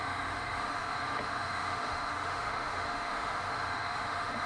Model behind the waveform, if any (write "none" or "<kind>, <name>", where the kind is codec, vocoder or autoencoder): autoencoder, DAC-VAE